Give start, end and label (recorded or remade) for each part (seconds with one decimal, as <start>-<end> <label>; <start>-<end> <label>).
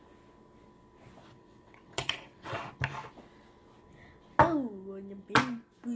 0.0-1.2 recorded; 1.2-2.7 remade; 2.7-6.0 recorded